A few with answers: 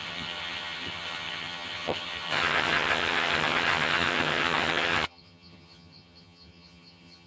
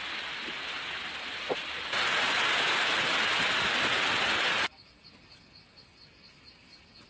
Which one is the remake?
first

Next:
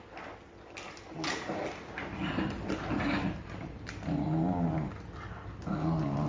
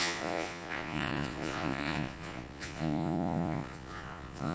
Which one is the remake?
second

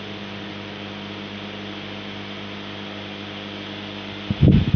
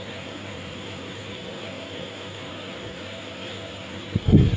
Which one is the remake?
second